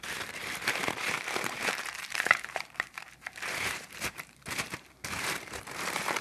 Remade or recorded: remade